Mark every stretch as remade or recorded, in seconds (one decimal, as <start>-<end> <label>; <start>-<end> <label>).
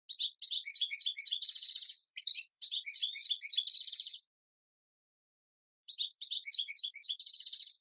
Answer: 0.0-0.5 recorded; 0.5-3.0 remade; 3.0-3.9 recorded; 3.9-7.8 remade